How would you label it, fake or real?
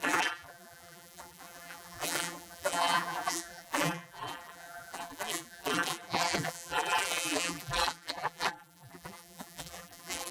fake